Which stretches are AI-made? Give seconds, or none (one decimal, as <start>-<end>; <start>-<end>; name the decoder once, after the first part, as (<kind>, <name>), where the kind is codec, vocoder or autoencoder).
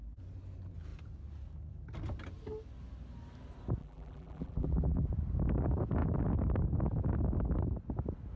3.8-5.1 (vocoder, BigVGAN v2)